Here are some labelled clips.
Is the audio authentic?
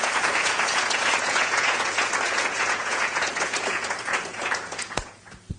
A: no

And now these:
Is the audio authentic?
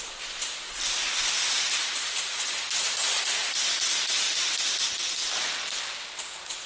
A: yes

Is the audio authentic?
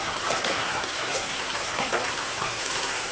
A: no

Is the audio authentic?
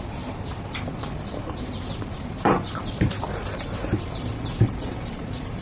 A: no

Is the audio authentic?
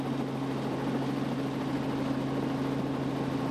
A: yes